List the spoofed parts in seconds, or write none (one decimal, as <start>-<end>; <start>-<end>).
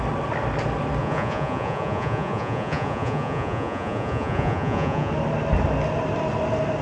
1.0-5.1